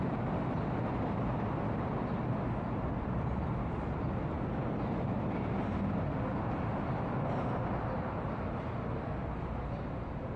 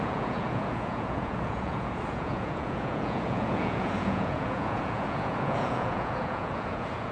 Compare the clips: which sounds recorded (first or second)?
first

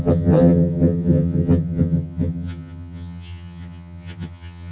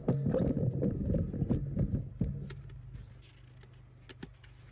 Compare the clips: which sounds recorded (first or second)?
second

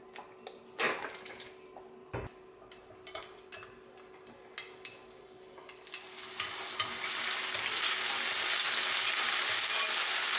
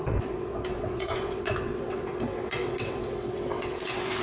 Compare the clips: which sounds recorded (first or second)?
first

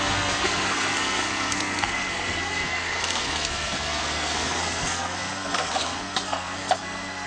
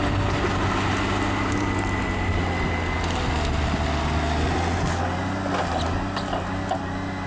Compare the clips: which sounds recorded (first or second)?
second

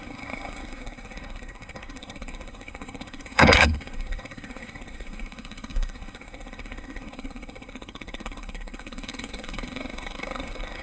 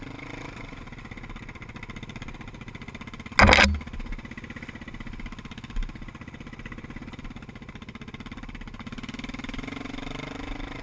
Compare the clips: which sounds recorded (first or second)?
second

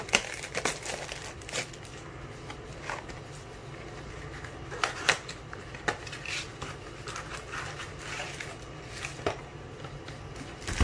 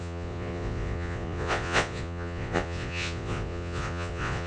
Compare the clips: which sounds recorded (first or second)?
first